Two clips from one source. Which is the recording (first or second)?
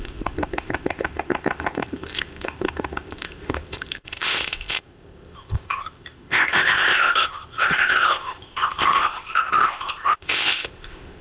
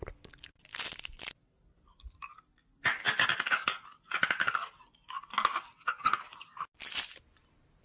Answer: second